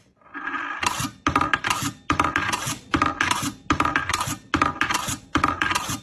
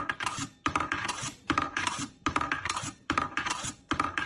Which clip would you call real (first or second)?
first